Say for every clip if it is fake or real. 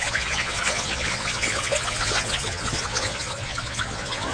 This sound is fake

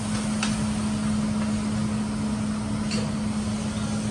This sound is real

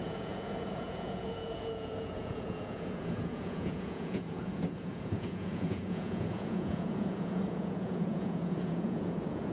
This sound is fake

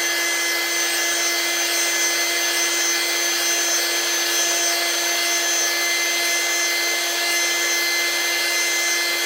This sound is real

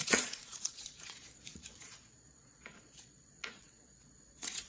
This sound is fake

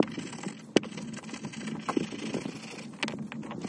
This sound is real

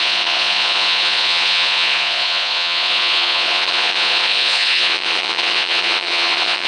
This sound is fake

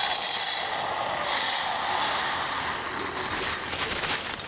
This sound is real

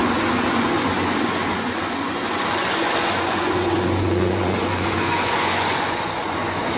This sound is fake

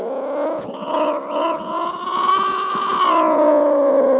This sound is fake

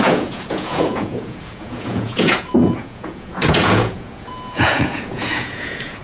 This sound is fake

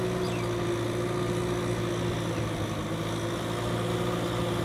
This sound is real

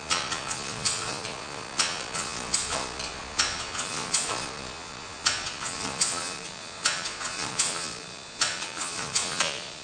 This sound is fake